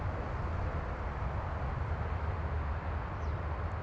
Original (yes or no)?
yes